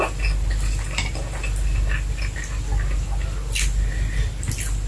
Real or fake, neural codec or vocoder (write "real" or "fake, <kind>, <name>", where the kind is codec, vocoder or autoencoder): real